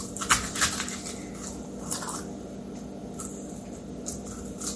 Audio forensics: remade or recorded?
recorded